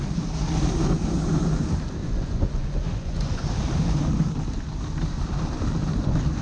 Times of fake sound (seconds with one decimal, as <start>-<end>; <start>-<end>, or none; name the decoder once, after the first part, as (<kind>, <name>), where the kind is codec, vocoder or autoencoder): 2.0-3.5 (vocoder, Vocos)